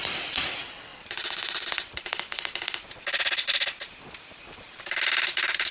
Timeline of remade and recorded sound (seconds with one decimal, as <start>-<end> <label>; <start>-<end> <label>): 0.0-5.7 recorded